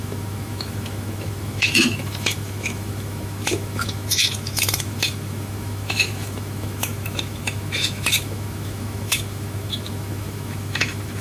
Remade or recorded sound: remade